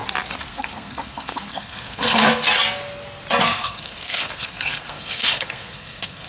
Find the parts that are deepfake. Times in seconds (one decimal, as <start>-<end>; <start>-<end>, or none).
0.5-2.2; 3.4-6.3